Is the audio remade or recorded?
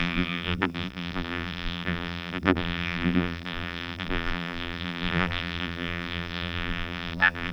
remade